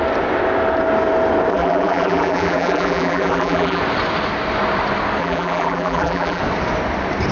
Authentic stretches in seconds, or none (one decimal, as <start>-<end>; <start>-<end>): 0.0-1.5; 3.8-5.2; 6.4-7.3

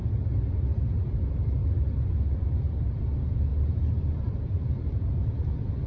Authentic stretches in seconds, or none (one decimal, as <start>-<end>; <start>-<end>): 0.0-3.5; 4.7-5.9

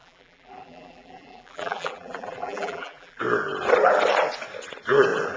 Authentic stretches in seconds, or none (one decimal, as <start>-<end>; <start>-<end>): 3.2-5.4